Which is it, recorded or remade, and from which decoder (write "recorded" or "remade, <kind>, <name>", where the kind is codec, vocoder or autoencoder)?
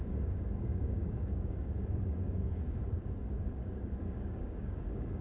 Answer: remade, codec, DAC